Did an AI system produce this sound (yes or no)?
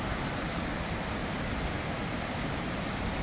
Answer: no